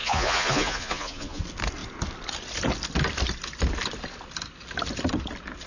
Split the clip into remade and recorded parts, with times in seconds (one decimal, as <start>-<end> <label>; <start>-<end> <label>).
0.0-1.4 remade; 1.4-5.7 recorded